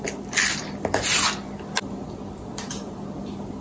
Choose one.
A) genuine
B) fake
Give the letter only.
A